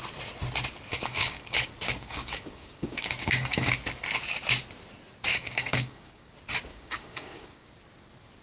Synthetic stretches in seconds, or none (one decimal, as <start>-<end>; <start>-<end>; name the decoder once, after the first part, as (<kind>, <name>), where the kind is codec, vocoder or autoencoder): 0.9-3.7 (codec, DAC); 5.3-6.3; 6.7-7.7